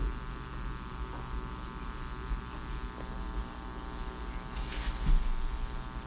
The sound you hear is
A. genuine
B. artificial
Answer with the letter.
A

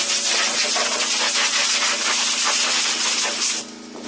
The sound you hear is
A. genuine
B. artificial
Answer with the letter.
A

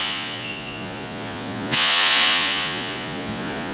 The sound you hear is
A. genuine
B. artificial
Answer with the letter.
B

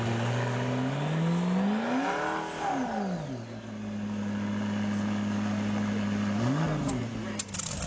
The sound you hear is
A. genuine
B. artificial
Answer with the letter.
A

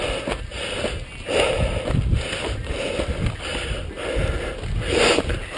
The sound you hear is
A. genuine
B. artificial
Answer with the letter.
A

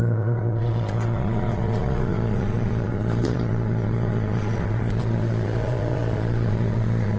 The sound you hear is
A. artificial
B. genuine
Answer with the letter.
A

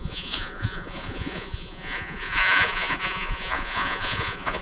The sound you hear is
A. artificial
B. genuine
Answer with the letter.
A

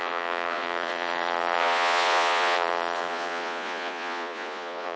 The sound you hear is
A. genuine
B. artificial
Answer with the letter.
B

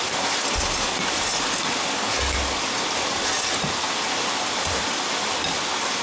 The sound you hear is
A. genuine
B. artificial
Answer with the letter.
A